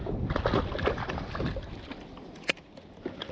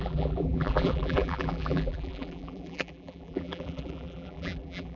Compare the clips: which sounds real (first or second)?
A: first